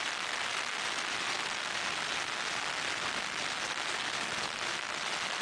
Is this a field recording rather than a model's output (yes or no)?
yes